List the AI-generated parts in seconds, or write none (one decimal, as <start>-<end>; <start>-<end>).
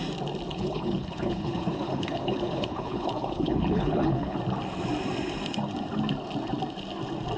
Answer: 0.5-4.4